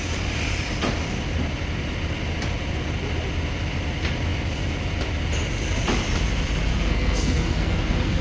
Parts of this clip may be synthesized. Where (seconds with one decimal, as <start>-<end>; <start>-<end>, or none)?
6.7-8.2